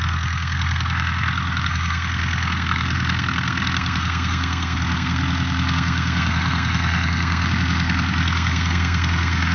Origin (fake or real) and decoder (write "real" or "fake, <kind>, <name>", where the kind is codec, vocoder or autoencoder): fake, codec, SNAC